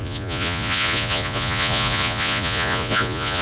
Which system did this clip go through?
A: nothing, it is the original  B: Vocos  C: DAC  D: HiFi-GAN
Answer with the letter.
B